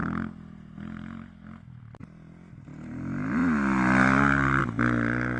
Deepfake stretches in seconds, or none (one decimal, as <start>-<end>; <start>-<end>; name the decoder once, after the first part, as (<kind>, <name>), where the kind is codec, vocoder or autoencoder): 0.0-2.6 (vocoder, BigVGAN v2)